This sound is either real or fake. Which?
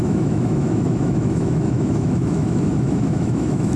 fake